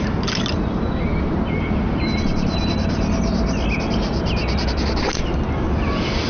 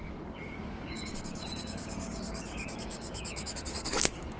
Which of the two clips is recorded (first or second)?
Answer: first